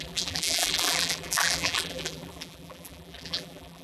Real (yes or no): no